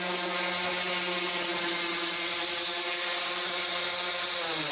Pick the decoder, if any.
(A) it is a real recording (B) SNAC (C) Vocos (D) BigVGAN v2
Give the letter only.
A